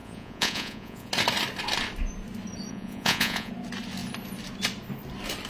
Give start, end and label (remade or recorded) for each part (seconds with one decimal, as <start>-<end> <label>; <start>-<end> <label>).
0.0-1.1 remade; 1.1-2.7 recorded; 2.7-3.5 remade; 3.5-5.5 recorded